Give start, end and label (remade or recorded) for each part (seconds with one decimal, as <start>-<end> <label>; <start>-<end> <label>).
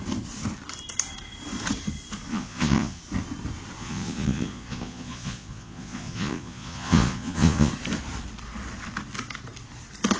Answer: 0.0-2.3 recorded; 2.3-3.0 remade; 3.0-3.8 recorded; 3.8-7.7 remade; 7.7-10.2 recorded